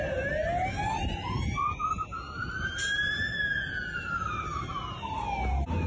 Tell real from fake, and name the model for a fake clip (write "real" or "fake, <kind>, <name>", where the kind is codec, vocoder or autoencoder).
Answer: real